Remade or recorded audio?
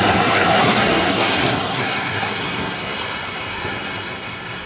remade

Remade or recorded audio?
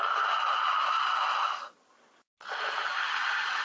recorded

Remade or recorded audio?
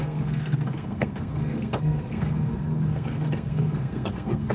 remade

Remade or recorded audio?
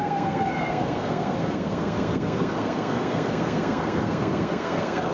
remade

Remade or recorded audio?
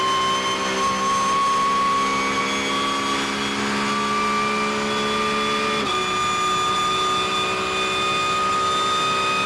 recorded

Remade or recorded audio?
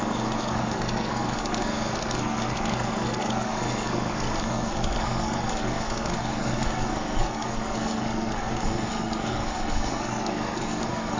remade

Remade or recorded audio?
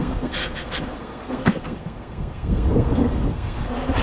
remade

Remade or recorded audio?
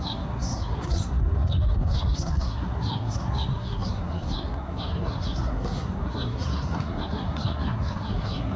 remade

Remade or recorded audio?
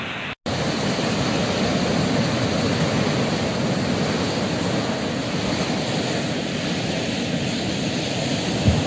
recorded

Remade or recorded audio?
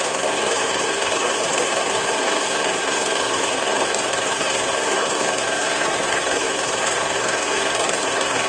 remade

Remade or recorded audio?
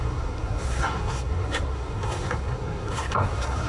remade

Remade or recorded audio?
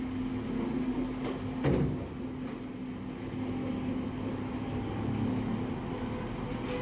recorded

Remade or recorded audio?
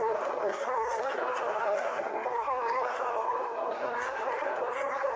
remade